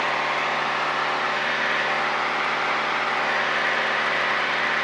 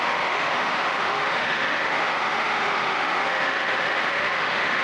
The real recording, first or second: first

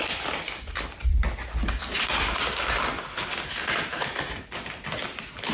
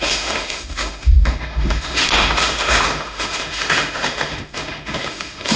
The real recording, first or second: first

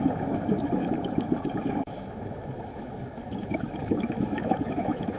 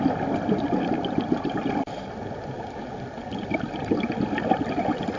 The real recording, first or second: second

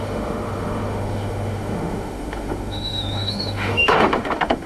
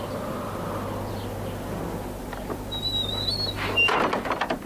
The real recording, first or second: second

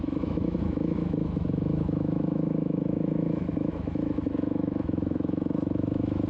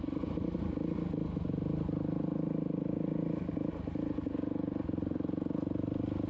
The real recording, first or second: second